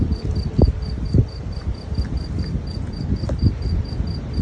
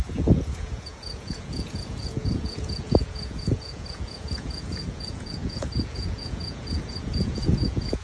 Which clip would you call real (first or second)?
first